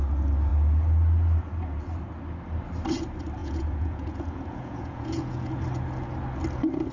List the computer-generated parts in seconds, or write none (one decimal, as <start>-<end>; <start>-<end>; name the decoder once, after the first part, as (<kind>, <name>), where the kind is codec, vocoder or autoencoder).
3.4-5.6 (vocoder, Vocos)